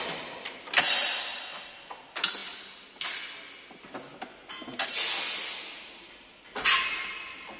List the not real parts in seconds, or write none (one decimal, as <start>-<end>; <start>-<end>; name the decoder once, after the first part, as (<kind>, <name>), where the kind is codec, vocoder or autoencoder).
none